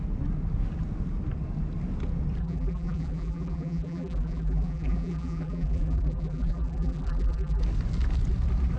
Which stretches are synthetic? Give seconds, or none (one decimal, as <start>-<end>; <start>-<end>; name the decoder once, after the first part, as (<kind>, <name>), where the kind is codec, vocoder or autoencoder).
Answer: 2.4-7.6 (vocoder, BigVGAN v2)